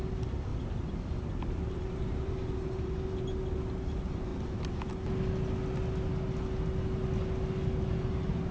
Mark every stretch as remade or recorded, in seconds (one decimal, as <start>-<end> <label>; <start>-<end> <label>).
0.0-0.5 recorded; 0.5-2.3 remade; 2.3-8.5 recorded